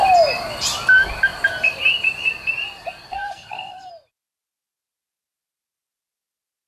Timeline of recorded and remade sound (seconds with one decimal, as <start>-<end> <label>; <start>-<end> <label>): 0.0-3.1 recorded; 3.1-3.9 remade; 3.9-6.7 recorded